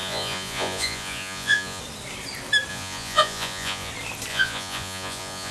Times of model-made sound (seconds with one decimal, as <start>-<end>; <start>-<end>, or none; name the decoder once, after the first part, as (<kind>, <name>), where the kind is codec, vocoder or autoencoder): 0.0-1.8 (vocoder, Vocos); 2.7-3.9; 4.3-5.5